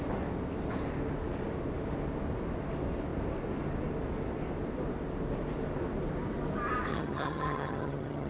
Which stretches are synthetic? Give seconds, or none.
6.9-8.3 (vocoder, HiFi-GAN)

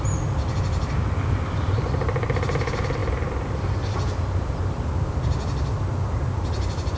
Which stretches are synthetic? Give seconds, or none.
none

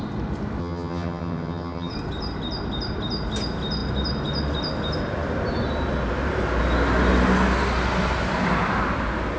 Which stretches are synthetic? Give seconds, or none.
0.6-1.9 (vocoder, HiFi-GAN)